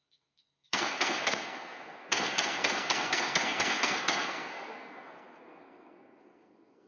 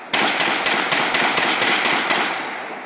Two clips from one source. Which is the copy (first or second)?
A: first